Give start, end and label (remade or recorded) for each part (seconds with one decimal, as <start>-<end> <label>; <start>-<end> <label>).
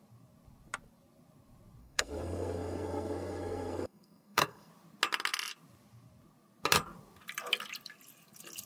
0.0-1.8 recorded; 1.8-4.7 remade; 4.7-8.7 recorded